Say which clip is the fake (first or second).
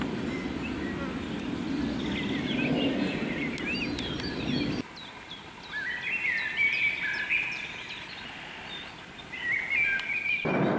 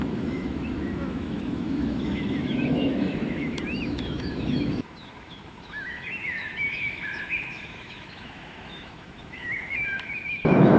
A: second